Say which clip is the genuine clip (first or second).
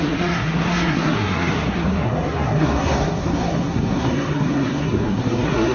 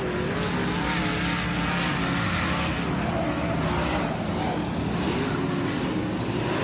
second